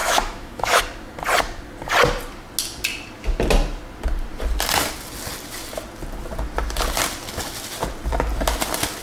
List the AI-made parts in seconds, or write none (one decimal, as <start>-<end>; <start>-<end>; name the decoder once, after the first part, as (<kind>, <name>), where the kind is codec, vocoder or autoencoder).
0.0-0.8 (autoencoder, DAC-VAE)